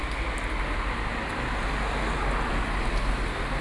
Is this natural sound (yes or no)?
yes